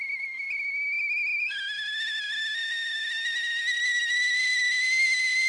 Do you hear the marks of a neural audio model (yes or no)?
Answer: no